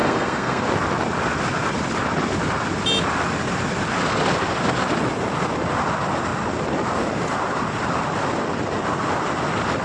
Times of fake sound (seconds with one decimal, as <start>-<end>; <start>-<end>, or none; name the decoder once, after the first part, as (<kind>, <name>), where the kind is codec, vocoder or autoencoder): 0.0-0.6 (codec, SNAC)